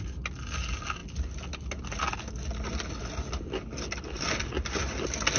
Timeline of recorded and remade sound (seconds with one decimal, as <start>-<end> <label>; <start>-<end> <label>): 0.0-5.4 recorded